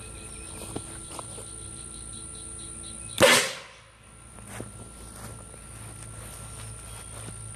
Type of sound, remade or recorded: recorded